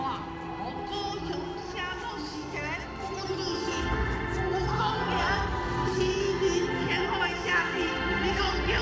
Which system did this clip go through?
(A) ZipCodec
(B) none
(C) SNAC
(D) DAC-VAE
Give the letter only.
B